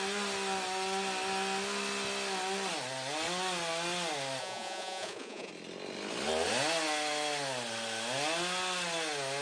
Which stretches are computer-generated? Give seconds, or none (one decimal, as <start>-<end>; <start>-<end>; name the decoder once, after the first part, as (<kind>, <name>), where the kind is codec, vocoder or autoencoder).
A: 4.4-5.5 (vocoder, Vocos)